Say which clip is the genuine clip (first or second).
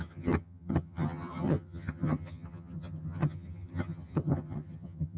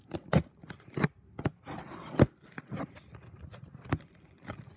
second